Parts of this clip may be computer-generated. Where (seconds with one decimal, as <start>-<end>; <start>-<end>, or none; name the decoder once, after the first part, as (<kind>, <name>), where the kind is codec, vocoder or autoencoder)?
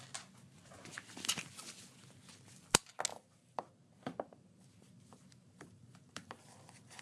3.1-7.0 (vocoder, BigVGAN v2)